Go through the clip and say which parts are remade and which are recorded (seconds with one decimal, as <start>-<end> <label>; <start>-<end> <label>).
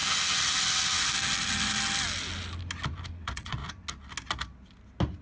0.0-3.1 recorded; 3.1-3.6 remade; 3.6-5.2 recorded